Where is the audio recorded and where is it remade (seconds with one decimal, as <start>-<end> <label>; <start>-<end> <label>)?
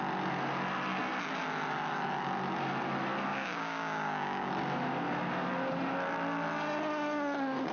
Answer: 0.0-3.3 recorded; 3.3-4.5 remade; 4.5-7.7 recorded